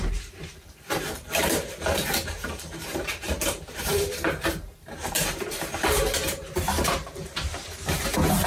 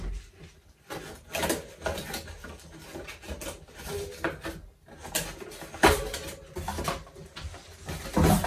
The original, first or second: second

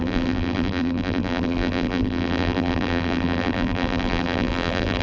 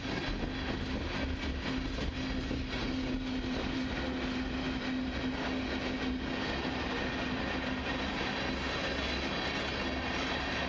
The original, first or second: second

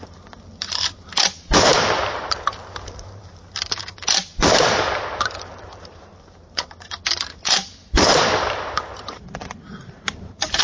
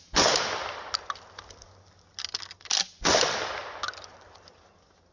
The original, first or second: second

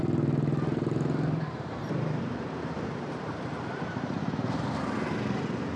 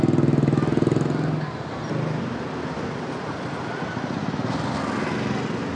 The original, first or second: second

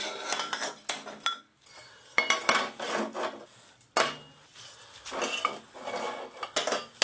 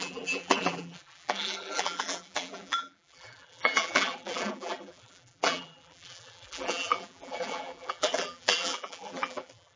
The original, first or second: first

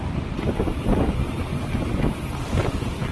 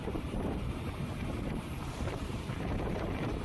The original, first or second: first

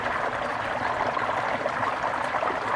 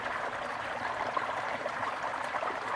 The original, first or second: first